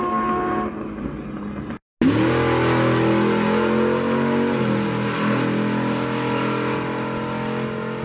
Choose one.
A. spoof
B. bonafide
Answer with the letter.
B